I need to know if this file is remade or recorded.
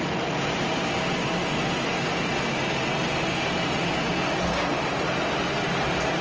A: recorded